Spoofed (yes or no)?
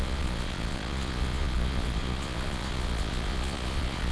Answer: yes